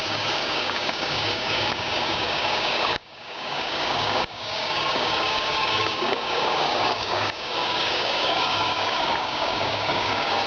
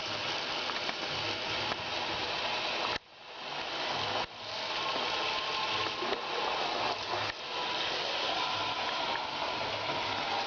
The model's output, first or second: first